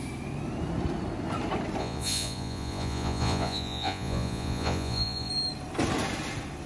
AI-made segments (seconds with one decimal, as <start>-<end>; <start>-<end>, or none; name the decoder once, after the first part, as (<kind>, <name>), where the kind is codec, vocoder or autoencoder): 1.8-5.3 (vocoder, Vocos)